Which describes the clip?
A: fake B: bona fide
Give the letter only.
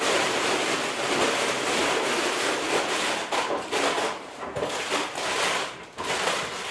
B